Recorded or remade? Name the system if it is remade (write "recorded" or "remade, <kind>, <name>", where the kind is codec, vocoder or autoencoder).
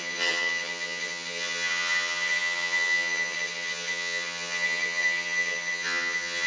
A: remade, vocoder, HiFi-GAN